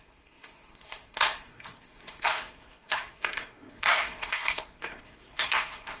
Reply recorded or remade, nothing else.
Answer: remade